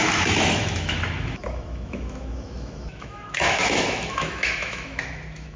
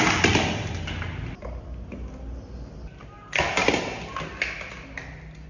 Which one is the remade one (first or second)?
first